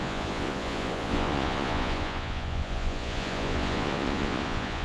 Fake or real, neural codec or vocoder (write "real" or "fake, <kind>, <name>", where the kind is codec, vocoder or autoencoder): fake, vocoder, Vocos